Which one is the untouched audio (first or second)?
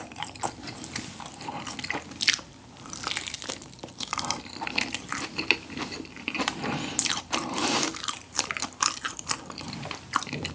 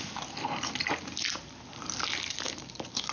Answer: second